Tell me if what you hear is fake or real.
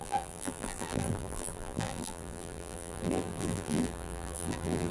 fake